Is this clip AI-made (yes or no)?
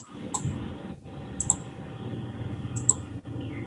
no